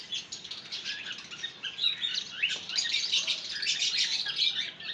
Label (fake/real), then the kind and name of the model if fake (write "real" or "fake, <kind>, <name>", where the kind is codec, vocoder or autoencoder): real